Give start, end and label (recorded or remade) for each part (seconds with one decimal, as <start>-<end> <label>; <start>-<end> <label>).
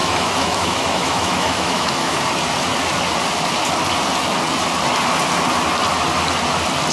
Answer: 0.0-2.2 remade; 2.2-6.9 recorded